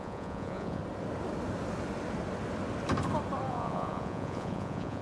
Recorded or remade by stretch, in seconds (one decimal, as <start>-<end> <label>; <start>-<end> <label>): 0.0-0.8 remade; 0.8-3.5 recorded; 3.5-5.0 remade